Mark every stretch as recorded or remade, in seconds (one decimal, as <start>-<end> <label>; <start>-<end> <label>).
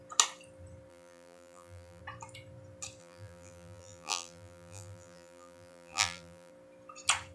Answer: 0.0-0.9 recorded; 0.9-2.0 remade; 2.0-3.0 recorded; 3.0-6.5 remade; 6.5-7.3 recorded